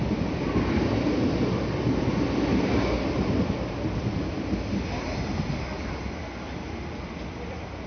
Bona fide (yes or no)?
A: yes